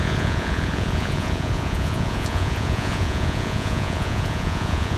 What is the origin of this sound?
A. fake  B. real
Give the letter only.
A